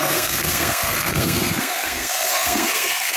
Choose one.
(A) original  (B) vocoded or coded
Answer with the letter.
B